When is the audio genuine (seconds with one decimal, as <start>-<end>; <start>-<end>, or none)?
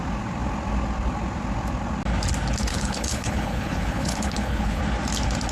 0.0-2.7; 4.8-5.5